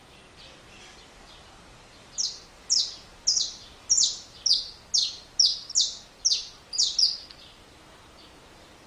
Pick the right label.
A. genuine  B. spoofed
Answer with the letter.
A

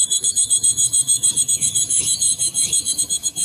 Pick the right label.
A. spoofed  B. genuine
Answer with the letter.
A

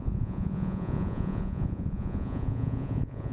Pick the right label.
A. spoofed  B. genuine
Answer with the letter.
A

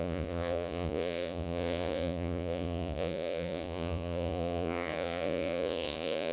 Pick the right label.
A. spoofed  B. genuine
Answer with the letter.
A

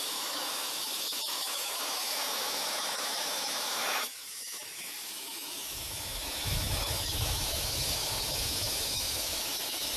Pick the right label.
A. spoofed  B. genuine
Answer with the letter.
A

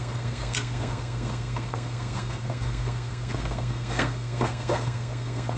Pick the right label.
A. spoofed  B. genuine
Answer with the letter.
A